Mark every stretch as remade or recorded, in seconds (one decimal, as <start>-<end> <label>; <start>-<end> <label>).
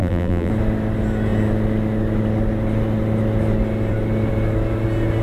0.0-0.5 remade; 0.5-5.2 recorded